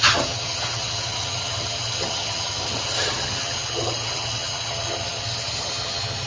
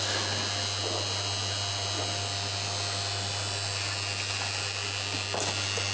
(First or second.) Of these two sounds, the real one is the second